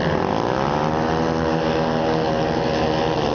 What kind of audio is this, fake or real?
real